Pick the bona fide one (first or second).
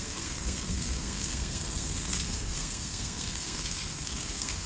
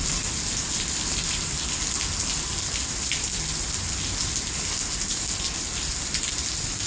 second